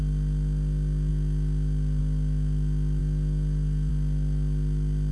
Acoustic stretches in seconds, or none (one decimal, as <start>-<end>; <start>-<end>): 0.0-5.1